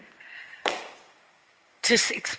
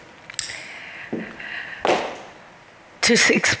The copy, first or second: first